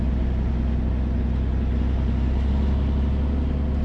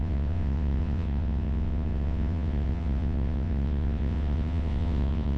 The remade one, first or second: second